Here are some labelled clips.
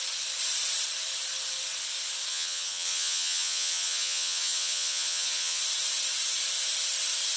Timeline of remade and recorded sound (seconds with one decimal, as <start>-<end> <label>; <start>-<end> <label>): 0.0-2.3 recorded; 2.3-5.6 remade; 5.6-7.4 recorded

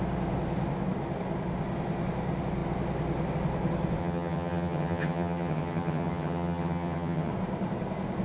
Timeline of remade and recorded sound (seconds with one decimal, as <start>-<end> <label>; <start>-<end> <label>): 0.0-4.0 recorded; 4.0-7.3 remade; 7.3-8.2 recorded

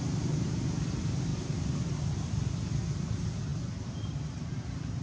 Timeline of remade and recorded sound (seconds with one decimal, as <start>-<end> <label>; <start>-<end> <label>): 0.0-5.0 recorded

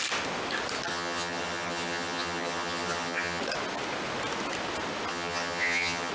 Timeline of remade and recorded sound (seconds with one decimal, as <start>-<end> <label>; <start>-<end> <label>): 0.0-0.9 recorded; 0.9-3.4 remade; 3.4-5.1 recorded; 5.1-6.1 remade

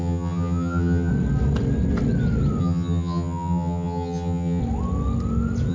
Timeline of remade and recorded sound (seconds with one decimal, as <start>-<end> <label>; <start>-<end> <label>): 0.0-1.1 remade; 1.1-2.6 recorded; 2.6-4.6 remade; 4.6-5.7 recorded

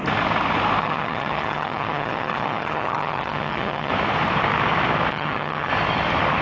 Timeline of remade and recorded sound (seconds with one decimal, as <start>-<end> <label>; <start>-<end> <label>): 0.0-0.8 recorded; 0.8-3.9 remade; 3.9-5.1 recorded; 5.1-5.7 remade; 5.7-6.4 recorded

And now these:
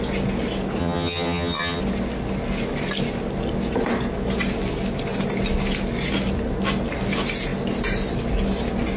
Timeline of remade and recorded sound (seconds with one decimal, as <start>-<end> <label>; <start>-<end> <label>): 0.0-0.8 recorded; 0.8-1.8 remade; 1.8-9.0 recorded